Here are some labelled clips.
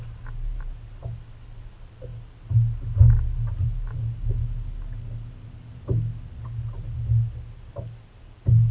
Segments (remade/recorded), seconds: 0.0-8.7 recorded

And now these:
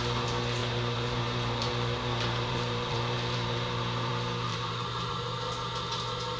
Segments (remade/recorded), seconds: 0.0-0.6 recorded; 0.6-4.1 remade; 4.1-4.5 recorded; 4.5-5.1 remade; 5.1-6.4 recorded

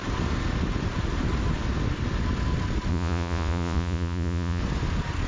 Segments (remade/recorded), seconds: 0.0-2.9 recorded; 2.9-4.6 remade; 4.6-5.3 recorded

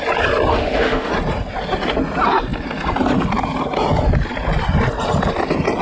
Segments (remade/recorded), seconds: 0.0-0.5 recorded; 0.5-1.1 remade; 1.1-5.8 recorded

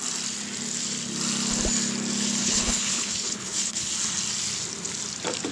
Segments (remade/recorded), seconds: 0.0-2.4 recorded; 2.4-3.9 remade; 3.9-5.5 recorded

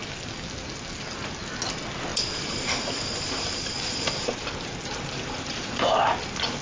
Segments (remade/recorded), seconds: 0.0-2.1 recorded; 2.1-4.6 remade; 4.6-6.6 recorded